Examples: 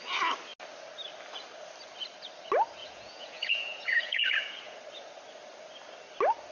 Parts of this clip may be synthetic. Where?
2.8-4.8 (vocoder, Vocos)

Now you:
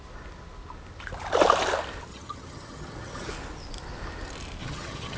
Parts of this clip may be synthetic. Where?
2.1-3.3 (vocoder, HiFi-GAN); 4.6-5.2